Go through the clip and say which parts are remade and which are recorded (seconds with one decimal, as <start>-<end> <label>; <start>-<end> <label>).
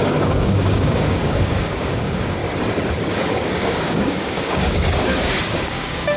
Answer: 0.0-2.4 remade; 2.4-3.1 recorded; 3.1-6.2 remade